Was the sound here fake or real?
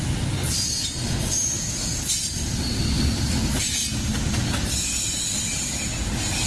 real